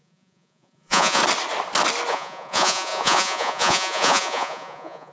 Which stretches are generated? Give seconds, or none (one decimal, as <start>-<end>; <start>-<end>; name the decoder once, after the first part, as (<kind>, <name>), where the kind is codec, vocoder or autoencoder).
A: 0.0-1.2 (vocoder, Vocos); 2.1-5.1